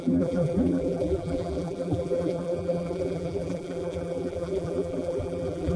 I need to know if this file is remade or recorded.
remade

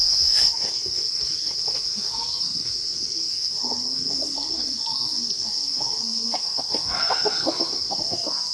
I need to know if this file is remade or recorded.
remade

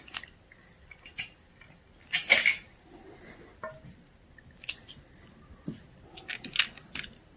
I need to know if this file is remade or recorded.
recorded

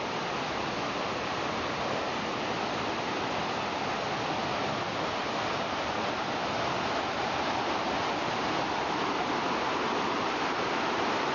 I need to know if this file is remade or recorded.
recorded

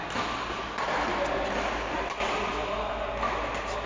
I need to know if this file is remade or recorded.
recorded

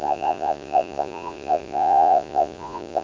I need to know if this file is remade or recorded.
remade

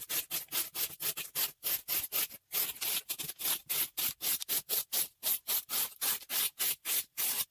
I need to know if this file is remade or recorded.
recorded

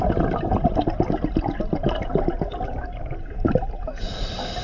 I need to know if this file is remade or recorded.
recorded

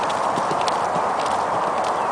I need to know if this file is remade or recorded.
recorded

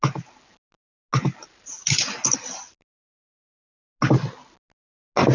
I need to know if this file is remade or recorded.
recorded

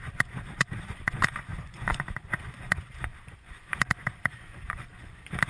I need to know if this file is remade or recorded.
remade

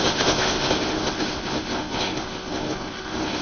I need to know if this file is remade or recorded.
remade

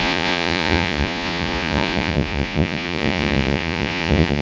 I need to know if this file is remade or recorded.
remade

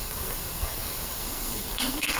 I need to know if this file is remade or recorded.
remade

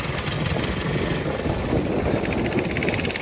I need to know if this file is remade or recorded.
recorded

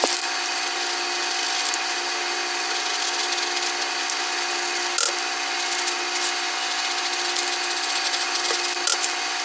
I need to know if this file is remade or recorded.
recorded